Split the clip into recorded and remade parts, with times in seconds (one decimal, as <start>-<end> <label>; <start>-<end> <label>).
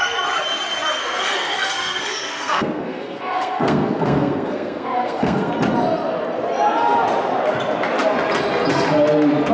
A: 0.0-1.0 recorded; 1.0-5.5 remade; 5.5-9.5 recorded